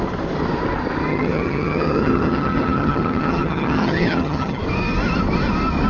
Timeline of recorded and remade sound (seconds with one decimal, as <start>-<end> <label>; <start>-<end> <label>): 0.0-1.1 recorded; 1.1-4.6 remade; 4.6-5.9 recorded